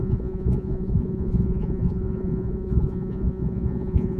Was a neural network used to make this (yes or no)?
yes